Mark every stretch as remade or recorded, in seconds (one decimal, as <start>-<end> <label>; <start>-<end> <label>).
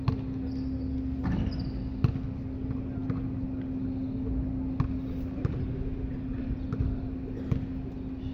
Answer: 0.0-8.3 recorded